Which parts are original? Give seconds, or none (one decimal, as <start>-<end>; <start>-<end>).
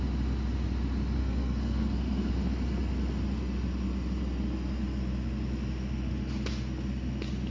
0.0-1.2; 2.3-7.5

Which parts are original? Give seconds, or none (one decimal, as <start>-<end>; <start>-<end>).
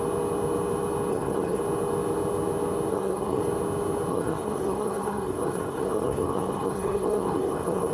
0.0-1.1; 1.6-2.9; 3.4-4.1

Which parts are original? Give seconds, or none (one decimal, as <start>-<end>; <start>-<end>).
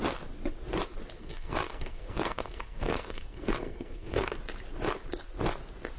0.0-1.2; 4.4-6.0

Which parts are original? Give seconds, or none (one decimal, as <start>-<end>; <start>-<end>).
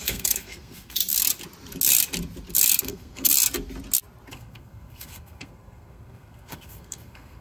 1.0-2.8; 3.3-4.3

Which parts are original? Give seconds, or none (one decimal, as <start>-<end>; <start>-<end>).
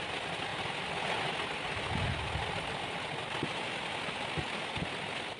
0.0-5.4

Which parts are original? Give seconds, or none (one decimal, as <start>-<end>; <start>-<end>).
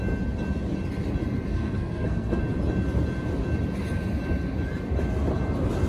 0.0-1.5; 2.4-5.9